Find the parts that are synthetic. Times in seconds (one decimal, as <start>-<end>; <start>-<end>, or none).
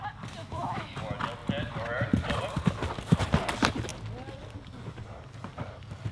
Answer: 0.4-0.9